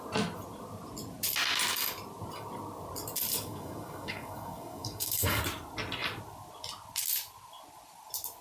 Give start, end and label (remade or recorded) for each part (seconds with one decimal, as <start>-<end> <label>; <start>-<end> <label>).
0.0-3.3 recorded; 3.3-5.4 remade; 5.4-8.4 recorded